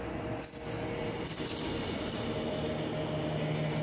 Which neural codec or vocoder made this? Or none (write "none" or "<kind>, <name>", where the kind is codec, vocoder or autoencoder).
none